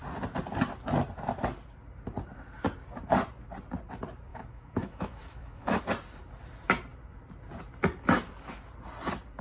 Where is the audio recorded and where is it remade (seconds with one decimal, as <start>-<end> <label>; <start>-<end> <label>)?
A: 0.0-4.3 recorded; 4.3-5.8 remade; 5.8-9.4 recorded